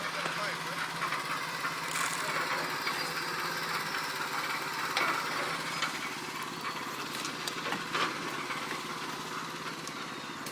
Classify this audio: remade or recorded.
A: recorded